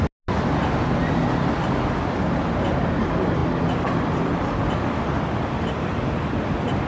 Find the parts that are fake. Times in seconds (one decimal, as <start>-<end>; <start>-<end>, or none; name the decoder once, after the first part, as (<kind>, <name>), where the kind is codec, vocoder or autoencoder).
none